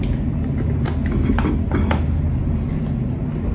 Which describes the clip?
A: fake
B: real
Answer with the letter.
B